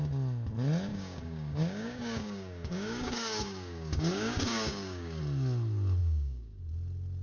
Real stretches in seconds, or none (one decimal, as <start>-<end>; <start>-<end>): 0.0-0.9; 5.2-6.0; 6.6-7.2